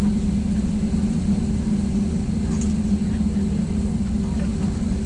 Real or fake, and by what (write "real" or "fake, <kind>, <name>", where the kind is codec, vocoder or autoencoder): real